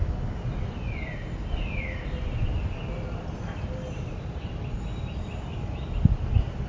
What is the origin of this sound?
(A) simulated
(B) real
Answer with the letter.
B